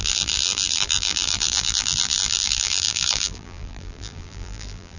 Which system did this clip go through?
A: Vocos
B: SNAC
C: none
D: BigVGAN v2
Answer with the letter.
D